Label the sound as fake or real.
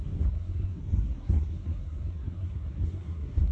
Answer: fake